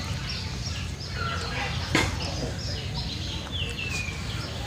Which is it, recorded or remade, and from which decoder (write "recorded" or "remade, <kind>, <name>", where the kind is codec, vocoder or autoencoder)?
recorded